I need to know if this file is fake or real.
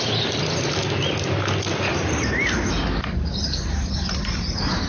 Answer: real